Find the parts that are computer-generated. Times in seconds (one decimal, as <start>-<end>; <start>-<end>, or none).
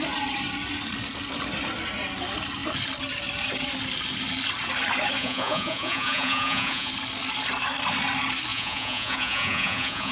5.2-6.9; 8.5-10.1